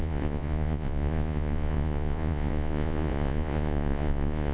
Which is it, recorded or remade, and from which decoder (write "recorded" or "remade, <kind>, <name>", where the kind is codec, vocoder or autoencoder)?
remade, vocoder, Vocos